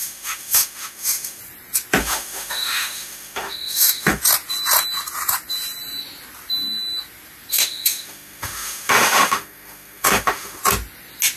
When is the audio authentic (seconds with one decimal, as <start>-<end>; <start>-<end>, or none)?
1.4-2.0; 4.2-7.5; 10.6-11.4